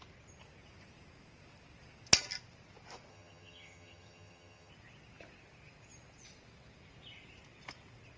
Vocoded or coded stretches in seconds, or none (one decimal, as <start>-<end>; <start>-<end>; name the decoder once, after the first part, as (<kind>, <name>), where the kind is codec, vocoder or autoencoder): 3.1-4.7 (vocoder, HiFi-GAN)